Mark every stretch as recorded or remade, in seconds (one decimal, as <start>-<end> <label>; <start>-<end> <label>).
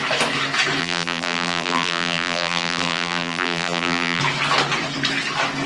0.0-0.8 recorded; 0.8-4.2 remade; 4.2-5.7 recorded